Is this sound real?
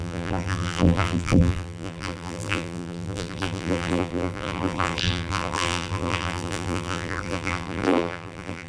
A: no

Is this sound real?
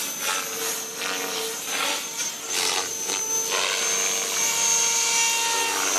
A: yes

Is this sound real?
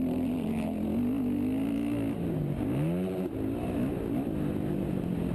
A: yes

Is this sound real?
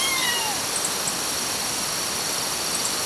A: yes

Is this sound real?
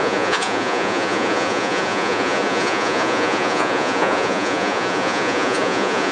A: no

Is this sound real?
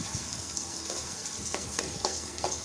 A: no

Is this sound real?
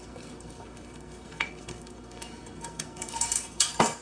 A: no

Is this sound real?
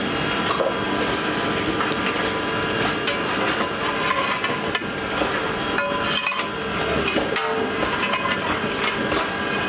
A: yes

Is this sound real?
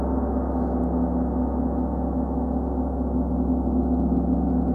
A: yes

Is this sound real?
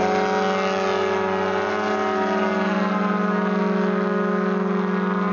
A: yes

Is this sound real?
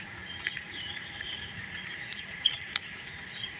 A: no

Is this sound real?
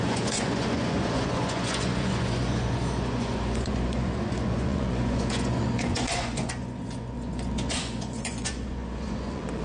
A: no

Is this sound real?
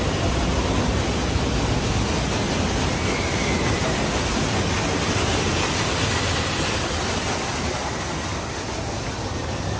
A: yes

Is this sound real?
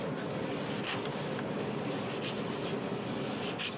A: yes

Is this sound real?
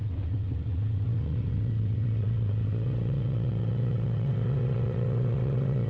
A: no